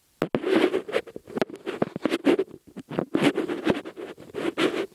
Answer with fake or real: real